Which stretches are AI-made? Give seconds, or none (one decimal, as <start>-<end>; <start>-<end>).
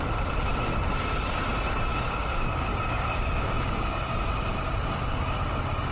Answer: 1.9-4.0